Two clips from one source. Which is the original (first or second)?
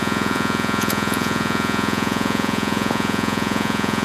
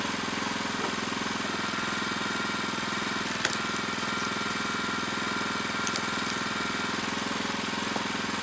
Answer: second